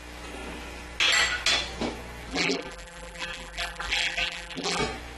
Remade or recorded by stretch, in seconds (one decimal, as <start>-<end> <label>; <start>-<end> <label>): 0.0-2.3 recorded; 2.3-4.8 remade; 4.8-5.2 recorded